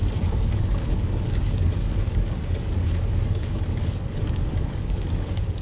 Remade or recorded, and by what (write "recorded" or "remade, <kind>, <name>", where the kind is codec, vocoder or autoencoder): remade, codec, DAC